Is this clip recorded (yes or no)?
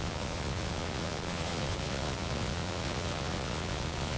no